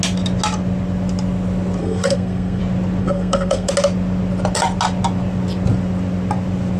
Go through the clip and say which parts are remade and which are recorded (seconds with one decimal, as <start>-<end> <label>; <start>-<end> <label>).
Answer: 0.0-1.8 recorded; 1.8-2.6 remade; 2.6-3.0 recorded; 3.0-3.7 remade; 3.7-6.8 recorded